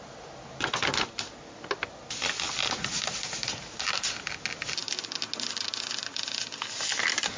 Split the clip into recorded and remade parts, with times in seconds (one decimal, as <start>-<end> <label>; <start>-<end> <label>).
0.0-7.4 recorded